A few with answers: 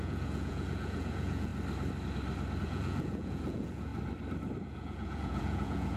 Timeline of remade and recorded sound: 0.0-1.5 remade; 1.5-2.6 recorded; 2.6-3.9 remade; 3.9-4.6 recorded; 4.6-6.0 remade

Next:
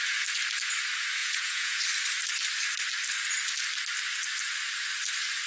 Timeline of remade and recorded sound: 0.0-1.2 recorded; 1.2-1.8 remade; 1.8-5.5 recorded

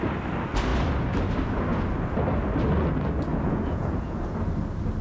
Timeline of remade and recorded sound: 0.0-3.3 recorded; 3.3-4.2 remade; 4.2-5.0 recorded

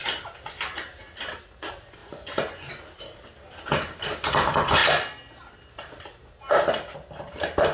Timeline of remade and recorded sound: 0.0-2.0 recorded; 2.0-2.7 remade; 2.7-7.7 recorded

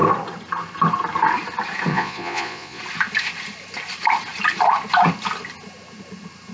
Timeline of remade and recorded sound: 0.0-1.9 recorded; 1.9-2.8 remade; 2.8-6.5 recorded

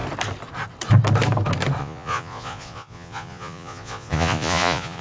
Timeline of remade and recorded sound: 0.0-1.8 recorded; 1.8-5.0 remade

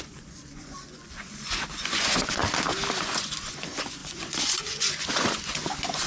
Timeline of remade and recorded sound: 0.0-2.4 remade; 2.4-3.0 recorded; 3.0-6.1 remade